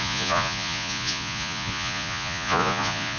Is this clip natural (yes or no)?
no